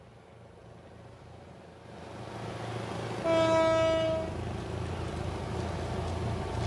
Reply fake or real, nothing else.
real